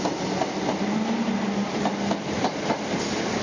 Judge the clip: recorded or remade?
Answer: recorded